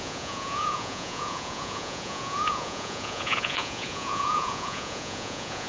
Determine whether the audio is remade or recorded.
remade